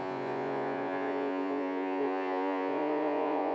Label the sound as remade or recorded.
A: remade